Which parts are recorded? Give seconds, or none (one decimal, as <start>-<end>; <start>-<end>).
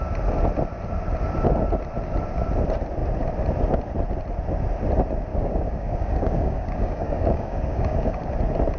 0.0-5.3; 8.3-8.8